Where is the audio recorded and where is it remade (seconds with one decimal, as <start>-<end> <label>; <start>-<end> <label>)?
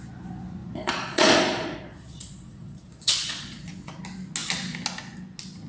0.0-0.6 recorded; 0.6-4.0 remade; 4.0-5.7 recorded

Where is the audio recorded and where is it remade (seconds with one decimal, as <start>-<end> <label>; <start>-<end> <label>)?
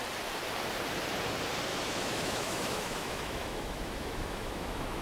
0.0-1.7 recorded; 1.7-5.0 remade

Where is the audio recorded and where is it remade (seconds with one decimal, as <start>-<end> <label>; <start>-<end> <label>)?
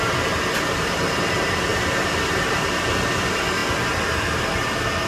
0.0-5.1 remade